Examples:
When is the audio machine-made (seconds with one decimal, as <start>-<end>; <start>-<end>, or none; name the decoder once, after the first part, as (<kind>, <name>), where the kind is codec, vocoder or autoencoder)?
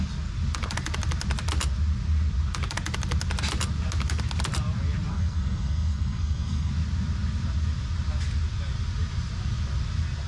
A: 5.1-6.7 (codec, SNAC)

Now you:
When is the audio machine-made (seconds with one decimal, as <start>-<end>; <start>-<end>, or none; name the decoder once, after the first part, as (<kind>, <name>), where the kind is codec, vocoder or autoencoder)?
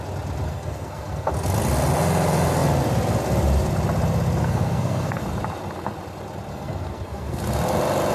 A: 0.5-1.3 (codec, SNAC); 4.4-5.2; 6.5-7.4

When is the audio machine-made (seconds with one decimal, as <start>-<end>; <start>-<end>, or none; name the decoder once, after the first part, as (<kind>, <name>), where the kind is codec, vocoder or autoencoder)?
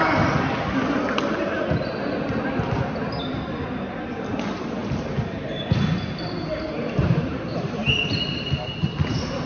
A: 7.0-8.5 (vocoder, BigVGAN v2)